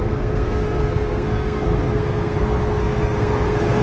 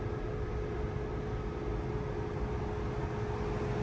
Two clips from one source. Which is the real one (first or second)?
second